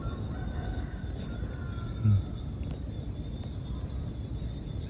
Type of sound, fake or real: real